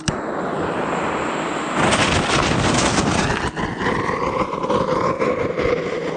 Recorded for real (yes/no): yes